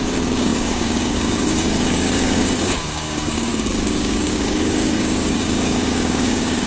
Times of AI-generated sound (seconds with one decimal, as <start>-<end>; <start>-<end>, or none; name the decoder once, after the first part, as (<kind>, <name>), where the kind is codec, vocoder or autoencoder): 0.0-6.7 (codec, DAC)